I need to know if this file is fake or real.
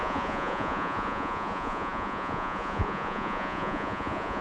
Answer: fake